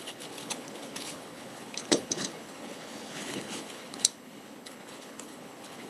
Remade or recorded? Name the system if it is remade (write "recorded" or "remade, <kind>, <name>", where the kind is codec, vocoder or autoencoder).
remade, codec, HILCodec